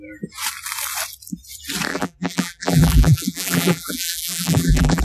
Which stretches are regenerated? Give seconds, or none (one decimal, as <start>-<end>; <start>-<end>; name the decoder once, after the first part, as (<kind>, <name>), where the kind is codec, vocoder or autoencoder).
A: 1.9-5.0 (vocoder, BigVGAN v2)

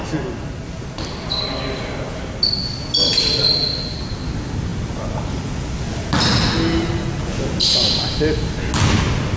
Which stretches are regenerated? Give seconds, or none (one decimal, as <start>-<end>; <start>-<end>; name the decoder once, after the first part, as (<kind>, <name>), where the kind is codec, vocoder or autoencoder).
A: none

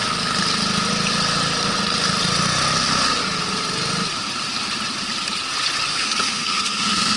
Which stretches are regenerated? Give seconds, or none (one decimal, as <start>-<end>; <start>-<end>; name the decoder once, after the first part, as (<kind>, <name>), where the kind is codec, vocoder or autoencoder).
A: 5.9-7.2 (codec, SNAC)

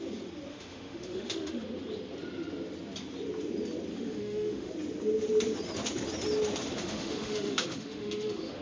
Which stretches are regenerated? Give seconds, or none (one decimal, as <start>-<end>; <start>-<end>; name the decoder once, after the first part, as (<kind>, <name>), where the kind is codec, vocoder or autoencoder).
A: 0.5-1.6 (autoencoder, DAC-VAE); 3.9-4.7; 6.8-8.6

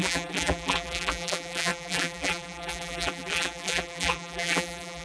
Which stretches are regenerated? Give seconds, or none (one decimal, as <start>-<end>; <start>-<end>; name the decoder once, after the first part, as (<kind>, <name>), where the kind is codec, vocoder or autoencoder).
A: 0.0-5.0 (vocoder, BigVGAN v2)

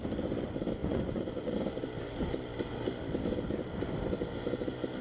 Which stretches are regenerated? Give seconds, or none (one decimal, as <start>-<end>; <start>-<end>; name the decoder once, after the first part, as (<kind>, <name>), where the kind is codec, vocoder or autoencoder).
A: 0.8-1.6 (vocoder, Vocos)

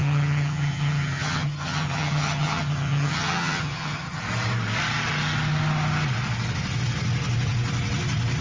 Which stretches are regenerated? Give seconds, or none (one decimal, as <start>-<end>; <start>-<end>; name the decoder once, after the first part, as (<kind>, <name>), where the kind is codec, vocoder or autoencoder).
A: 0.0-4.2 (vocoder, HiFi-GAN)

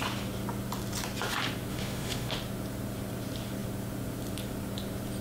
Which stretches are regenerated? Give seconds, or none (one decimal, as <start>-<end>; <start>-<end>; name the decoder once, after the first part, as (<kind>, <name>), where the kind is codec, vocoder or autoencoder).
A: 1.7-2.3 (autoencoder, DAC-VAE)